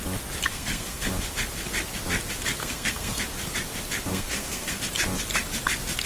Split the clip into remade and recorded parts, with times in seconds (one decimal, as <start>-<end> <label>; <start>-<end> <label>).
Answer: 0.0-0.5 recorded; 0.5-1.1 remade; 1.1-2.6 recorded; 2.6-3.2 remade; 3.2-4.1 recorded; 4.1-4.8 remade; 4.8-6.1 recorded